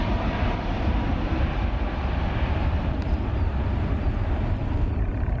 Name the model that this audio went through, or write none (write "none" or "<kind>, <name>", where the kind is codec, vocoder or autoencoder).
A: vocoder, BigVGAN v2